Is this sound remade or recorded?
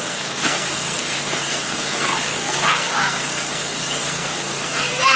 remade